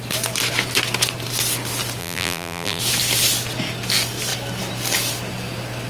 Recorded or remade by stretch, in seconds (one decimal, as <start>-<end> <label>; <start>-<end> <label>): 0.0-2.0 recorded; 2.0-2.8 remade; 2.8-5.9 recorded